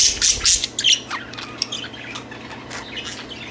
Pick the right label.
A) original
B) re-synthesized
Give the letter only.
A